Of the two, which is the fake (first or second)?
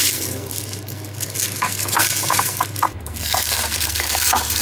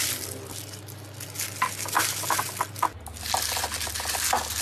first